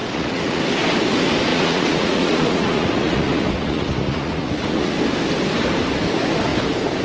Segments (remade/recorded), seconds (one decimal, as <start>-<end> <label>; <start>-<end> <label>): 0.0-0.6 remade; 0.6-1.5 recorded; 1.5-4.9 remade; 4.9-7.0 recorded

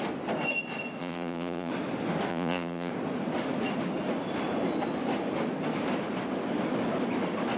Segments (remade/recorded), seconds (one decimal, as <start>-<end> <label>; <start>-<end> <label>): 0.0-1.0 recorded; 1.0-1.7 remade; 1.7-2.3 recorded; 2.3-2.9 remade; 2.9-7.6 recorded

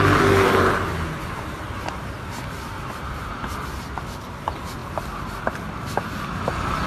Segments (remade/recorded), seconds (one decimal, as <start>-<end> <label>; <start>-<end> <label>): 0.0-6.9 recorded

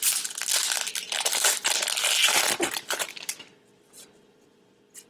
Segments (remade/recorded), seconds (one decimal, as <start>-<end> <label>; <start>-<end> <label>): 0.0-5.1 recorded